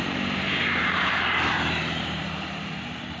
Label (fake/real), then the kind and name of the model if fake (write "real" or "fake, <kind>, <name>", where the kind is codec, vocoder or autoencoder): fake, vocoder, BigVGAN v2